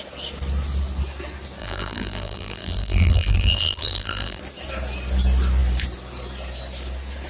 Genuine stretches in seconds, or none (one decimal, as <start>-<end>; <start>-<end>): 0.0-1.6; 4.4-7.3

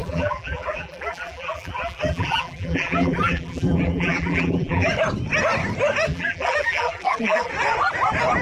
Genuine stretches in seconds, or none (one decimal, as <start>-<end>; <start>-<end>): 4.9-6.1; 7.5-8.4